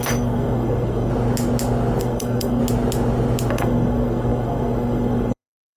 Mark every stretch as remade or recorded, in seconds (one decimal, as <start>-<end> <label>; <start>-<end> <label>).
0.0-1.1 remade; 1.1-2.0 recorded; 2.0-2.6 remade; 2.6-3.5 recorded; 3.5-5.8 remade